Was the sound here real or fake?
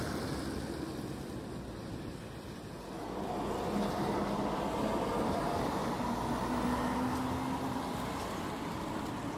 real